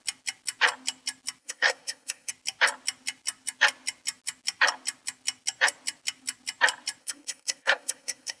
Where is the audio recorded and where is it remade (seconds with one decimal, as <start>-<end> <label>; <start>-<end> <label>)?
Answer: 0.0-1.4 recorded; 1.4-2.3 remade; 2.3-7.0 recorded; 7.0-8.4 remade

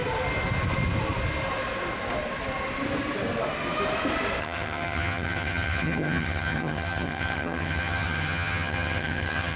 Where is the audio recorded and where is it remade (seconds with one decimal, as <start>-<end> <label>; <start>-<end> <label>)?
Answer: 0.0-4.4 recorded; 4.4-9.6 remade

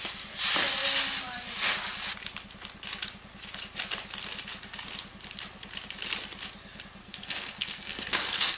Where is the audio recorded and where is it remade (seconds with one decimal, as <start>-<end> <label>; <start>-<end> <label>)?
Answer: 0.0-7.0 recorded; 7.0-8.6 remade

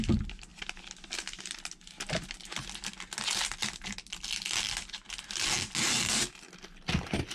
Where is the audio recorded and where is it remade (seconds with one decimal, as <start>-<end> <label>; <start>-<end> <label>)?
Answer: 0.0-7.3 recorded

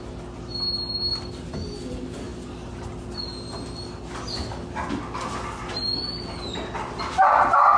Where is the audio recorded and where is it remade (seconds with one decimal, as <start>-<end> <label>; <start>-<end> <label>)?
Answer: 0.0-7.8 recorded